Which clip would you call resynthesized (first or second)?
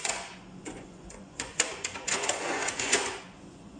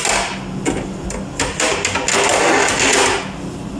first